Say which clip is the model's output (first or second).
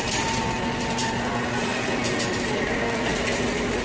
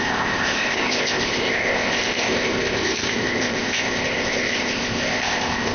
second